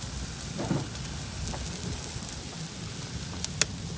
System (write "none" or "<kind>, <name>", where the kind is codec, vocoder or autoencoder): none